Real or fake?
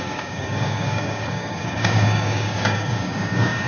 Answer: fake